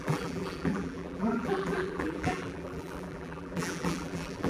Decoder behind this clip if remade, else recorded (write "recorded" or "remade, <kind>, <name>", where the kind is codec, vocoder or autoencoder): remade, vocoder, BigVGAN v2